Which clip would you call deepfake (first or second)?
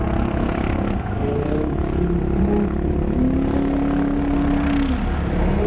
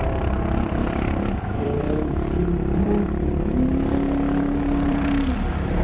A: second